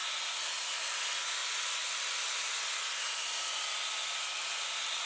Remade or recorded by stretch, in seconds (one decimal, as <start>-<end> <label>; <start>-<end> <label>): 0.0-0.5 recorded; 0.5-5.1 remade